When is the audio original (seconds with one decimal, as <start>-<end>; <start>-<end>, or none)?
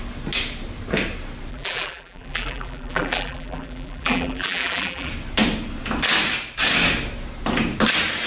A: 0.0-1.5; 5.1-8.3